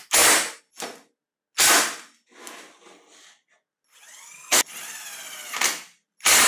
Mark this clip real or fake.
real